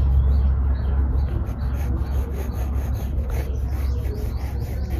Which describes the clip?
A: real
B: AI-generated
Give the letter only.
A